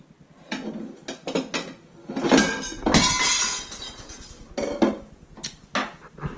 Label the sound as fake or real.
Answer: real